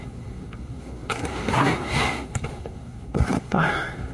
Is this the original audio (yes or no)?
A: no